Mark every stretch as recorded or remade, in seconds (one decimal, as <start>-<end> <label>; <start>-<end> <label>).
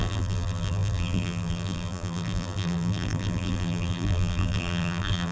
0.0-5.3 remade